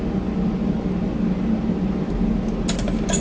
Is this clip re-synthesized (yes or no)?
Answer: no